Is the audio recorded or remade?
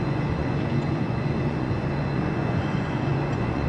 remade